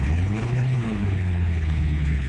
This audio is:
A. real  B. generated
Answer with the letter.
B